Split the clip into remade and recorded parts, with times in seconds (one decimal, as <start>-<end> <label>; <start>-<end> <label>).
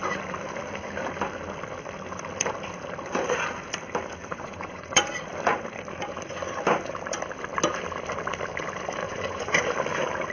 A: 0.0-4.3 recorded; 4.3-5.1 remade; 5.1-9.0 recorded; 9.0-9.6 remade; 9.6-10.3 recorded